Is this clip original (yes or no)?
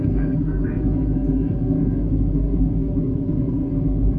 no